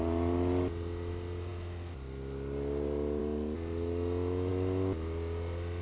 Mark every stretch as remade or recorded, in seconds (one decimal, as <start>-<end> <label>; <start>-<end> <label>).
0.0-5.8 recorded